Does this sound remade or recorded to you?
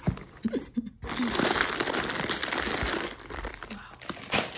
recorded